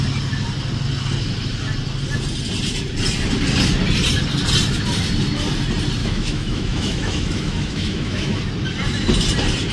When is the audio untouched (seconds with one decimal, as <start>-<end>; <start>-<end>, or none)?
0.0-6.0; 8.4-9.7